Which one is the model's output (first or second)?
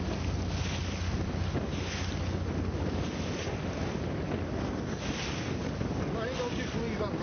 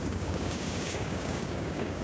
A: second